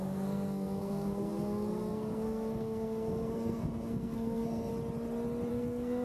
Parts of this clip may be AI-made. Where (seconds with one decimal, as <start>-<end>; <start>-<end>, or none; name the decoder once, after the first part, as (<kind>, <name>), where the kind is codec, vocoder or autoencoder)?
0.0-4.7 (codec, SNAC); 5.5-6.0

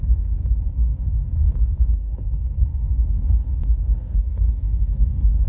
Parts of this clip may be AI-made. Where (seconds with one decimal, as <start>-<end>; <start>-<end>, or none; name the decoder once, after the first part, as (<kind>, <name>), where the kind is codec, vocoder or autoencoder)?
0.0-5.5 (codec, SNAC)

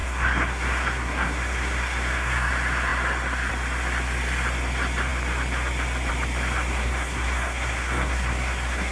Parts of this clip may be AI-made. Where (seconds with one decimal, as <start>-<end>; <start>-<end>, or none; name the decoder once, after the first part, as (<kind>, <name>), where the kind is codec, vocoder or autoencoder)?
0.0-2.5 (codec, SNAC); 6.7-8.9

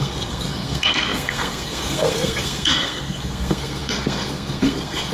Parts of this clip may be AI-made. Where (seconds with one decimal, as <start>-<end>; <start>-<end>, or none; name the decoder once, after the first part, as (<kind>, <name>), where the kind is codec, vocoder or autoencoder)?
0.0-5.1 (codec, SNAC)

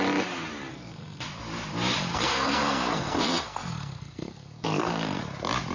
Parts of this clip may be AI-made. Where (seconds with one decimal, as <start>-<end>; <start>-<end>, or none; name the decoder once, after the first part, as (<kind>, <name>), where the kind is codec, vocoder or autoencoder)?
0.7-1.2 (codec, SNAC); 2.1-5.2

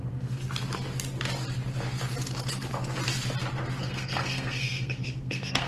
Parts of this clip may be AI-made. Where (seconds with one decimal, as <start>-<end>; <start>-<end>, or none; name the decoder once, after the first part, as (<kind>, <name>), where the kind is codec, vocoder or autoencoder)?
0.0-0.4 (codec, SNAC); 3.8-5.7